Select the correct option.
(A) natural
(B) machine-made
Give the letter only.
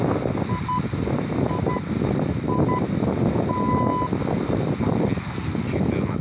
A